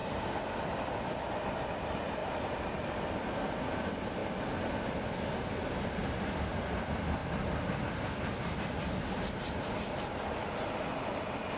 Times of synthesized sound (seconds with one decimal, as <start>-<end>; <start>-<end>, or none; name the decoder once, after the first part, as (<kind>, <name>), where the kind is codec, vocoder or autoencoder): none